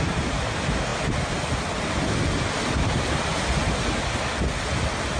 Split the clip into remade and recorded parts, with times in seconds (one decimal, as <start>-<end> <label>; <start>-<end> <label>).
0.0-5.2 recorded